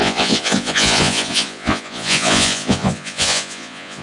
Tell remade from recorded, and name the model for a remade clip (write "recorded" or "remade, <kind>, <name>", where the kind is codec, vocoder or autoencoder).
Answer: remade, vocoder, Vocos